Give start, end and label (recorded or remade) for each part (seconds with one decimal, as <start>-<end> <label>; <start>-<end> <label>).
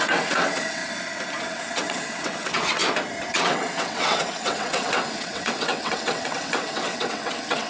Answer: 0.0-0.8 remade; 0.8-1.4 recorded; 1.4-2.8 remade; 2.8-3.3 recorded; 3.3-7.7 remade